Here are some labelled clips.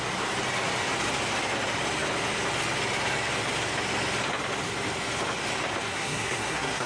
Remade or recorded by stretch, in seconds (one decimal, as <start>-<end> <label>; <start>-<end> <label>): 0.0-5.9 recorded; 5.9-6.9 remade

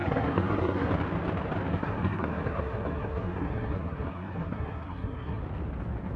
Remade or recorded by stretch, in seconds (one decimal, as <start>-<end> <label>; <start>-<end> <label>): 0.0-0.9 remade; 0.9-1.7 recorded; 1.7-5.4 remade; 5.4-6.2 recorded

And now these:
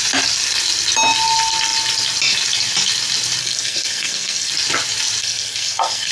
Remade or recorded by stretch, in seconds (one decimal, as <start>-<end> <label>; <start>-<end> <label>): 0.0-3.4 recorded; 3.4-4.5 remade; 4.5-5.2 recorded; 5.2-6.1 remade

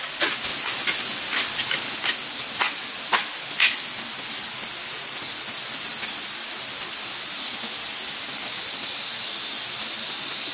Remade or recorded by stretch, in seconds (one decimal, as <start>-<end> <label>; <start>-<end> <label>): 0.0-10.5 recorded

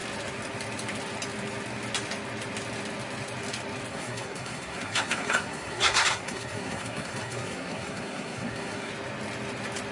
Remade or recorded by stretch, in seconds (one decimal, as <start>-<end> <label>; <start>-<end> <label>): 0.0-3.9 recorded; 3.9-8.9 remade; 8.9-9.9 recorded

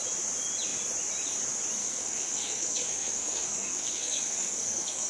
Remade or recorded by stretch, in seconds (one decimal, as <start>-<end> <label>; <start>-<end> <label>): 0.0-1.8 recorded; 1.8-5.1 remade

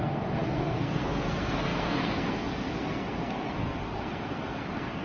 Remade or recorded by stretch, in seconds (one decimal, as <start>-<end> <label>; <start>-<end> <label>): 0.0-5.0 remade